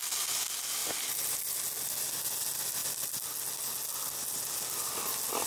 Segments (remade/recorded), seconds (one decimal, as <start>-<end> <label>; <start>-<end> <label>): 0.0-5.5 recorded